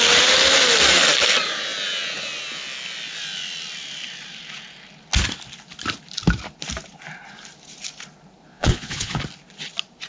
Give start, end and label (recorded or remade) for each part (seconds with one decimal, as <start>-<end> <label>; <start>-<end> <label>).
0.0-8.5 recorded; 8.5-9.2 remade; 9.2-10.1 recorded